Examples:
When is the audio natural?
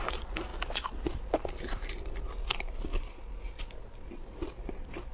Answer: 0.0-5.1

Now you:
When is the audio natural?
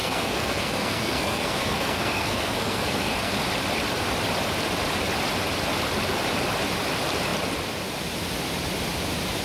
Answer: 3.3-9.4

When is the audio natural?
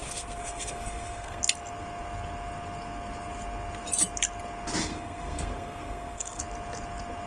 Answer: 1.4-4.8; 6.4-7.3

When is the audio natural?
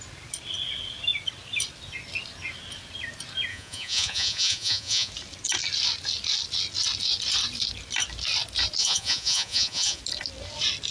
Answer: 0.0-3.5; 5.1-8.8; 10.0-10.9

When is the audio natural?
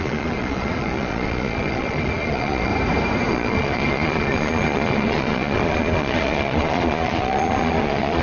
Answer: 2.7-3.3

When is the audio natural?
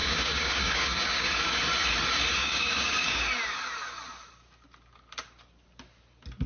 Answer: 1.6-2.4; 3.2-6.5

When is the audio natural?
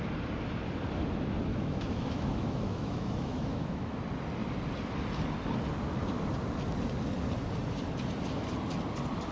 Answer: 0.0-1.5; 4.0-9.3